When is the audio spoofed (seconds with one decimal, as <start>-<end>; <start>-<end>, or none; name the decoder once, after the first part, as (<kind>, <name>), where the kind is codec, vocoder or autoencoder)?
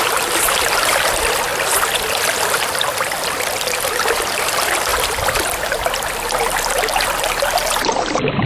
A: 0.0-1.5 (vocoder, BigVGAN v2); 2.4-4.9; 6.9-8.5